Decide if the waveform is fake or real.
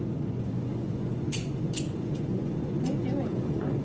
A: fake